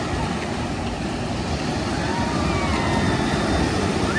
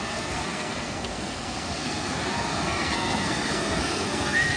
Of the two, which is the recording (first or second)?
first